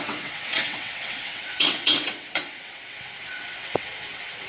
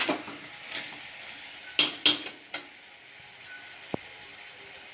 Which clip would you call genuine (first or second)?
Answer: second